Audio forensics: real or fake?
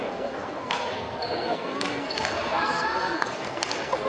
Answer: fake